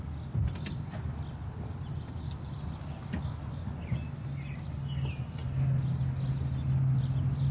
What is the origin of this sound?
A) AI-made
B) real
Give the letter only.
B